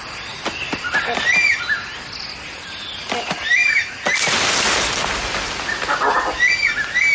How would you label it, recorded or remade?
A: recorded